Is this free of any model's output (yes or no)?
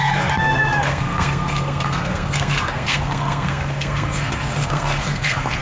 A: no